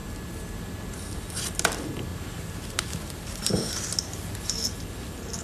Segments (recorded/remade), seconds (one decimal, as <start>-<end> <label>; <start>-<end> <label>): 0.0-2.1 recorded; 2.1-3.8 remade; 3.8-5.4 recorded